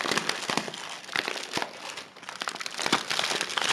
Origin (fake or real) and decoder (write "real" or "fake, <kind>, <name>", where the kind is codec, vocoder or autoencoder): real